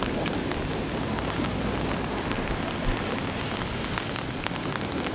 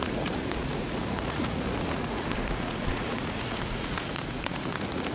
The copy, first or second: second